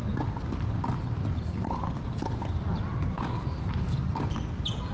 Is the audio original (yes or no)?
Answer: yes